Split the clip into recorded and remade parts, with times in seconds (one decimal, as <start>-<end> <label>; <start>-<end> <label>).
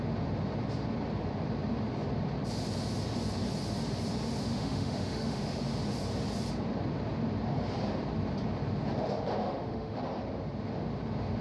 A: 0.0-4.5 recorded; 4.5-5.6 remade; 5.6-9.4 recorded; 9.4-10.0 remade; 10.0-11.4 recorded